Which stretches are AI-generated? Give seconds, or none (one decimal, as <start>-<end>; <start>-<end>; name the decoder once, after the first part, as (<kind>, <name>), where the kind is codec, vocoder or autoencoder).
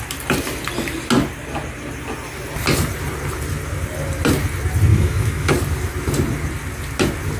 4.9-5.5 (autoencoder, DAC-VAE)